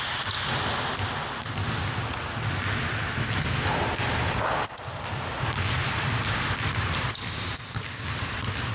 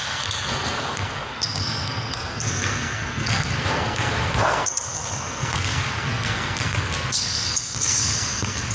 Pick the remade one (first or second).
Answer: second